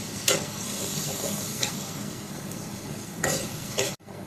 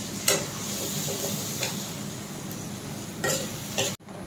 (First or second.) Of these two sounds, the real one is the second